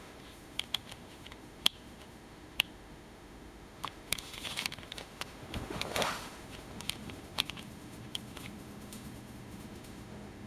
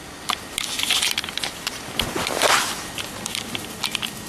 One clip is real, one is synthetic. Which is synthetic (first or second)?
first